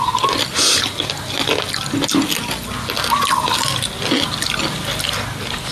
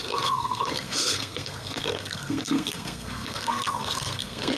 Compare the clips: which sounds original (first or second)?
first